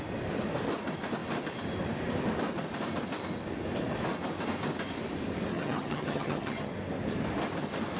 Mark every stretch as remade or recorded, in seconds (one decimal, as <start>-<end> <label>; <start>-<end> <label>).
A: 0.0-5.5 recorded; 5.5-6.7 remade; 6.7-8.0 recorded